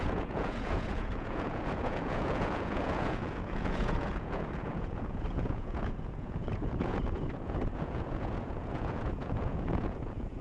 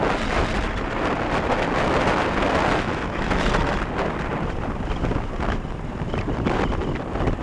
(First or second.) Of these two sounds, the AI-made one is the first